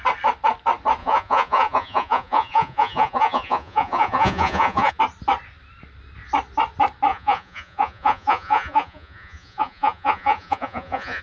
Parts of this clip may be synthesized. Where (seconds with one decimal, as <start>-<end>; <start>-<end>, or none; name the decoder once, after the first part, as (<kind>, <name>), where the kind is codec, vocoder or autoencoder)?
1.0-5.0 (vocoder, Vocos); 7.1-11.2